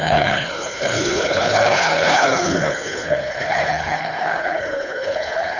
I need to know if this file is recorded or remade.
remade